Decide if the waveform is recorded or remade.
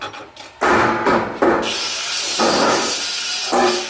recorded